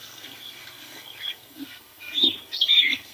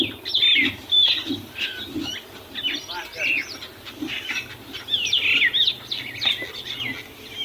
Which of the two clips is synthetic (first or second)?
first